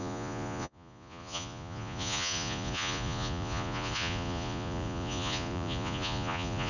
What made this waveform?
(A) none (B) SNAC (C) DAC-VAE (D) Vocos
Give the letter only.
D